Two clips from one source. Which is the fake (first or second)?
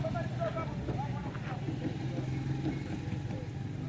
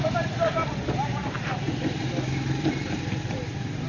second